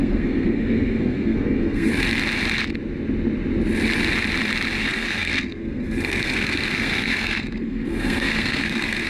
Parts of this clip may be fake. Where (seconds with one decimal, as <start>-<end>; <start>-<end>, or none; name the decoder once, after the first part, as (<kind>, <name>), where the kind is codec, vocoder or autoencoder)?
0.0-1.9 (codec, SNAC); 4.8-9.1